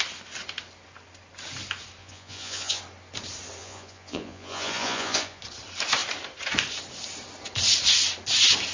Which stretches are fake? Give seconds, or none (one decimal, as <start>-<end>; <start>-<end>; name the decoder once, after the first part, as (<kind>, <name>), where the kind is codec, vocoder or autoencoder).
2.0-2.8 (vocoder, Vocos); 3.6-5.4